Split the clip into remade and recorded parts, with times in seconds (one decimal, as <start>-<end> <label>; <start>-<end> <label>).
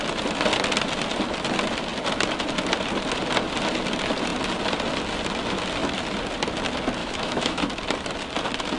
0.0-7.0 recorded; 7.0-7.6 remade; 7.6-8.8 recorded